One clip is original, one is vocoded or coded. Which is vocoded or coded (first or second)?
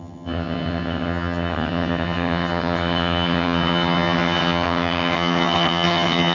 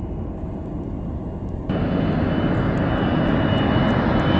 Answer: first